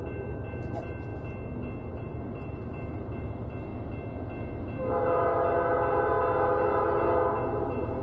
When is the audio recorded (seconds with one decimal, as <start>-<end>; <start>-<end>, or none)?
1.1-1.9; 3.7-7.4